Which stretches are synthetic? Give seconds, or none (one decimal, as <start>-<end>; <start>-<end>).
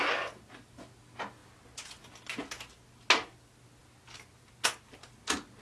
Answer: none